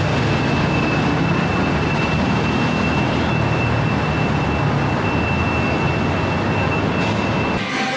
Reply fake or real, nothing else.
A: real